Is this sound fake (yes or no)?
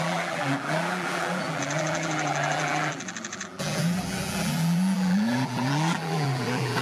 yes